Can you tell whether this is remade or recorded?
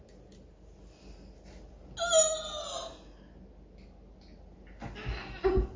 recorded